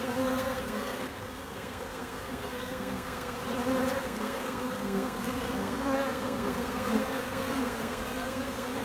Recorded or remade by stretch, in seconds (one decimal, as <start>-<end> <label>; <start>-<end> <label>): 0.0-3.4 remade; 3.4-4.0 recorded; 4.0-8.8 remade

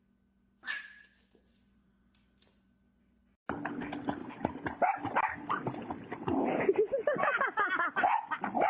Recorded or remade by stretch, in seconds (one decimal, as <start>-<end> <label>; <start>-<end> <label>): 0.0-0.6 recorded; 0.6-3.2 remade; 3.2-4.2 recorded; 4.2-6.7 remade; 6.7-8.7 recorded

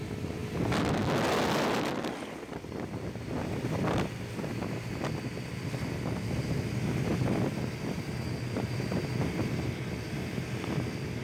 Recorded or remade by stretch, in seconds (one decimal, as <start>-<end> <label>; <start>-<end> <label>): 0.0-11.2 recorded

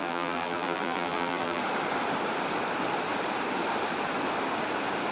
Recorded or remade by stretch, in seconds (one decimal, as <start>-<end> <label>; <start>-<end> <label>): 0.0-1.6 remade; 1.6-5.1 recorded

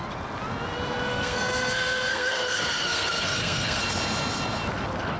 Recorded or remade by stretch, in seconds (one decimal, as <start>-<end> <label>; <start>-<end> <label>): 0.0-1.1 recorded; 1.1-3.8 remade; 3.8-5.2 recorded